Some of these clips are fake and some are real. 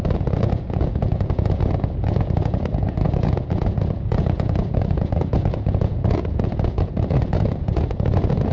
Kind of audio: fake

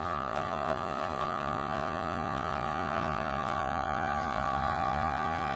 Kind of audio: fake